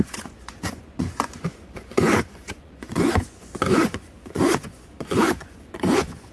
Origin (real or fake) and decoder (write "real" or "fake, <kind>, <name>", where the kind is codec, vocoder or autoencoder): fake, vocoder, Vocos